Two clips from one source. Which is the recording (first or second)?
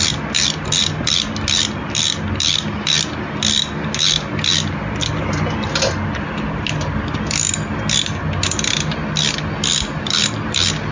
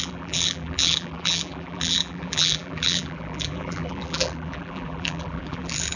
first